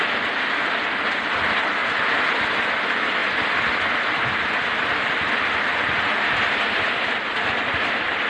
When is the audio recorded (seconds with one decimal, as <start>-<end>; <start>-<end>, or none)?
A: 0.0-8.3